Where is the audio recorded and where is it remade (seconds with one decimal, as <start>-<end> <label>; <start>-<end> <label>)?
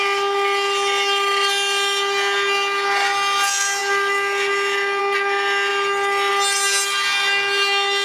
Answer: 0.0-8.0 recorded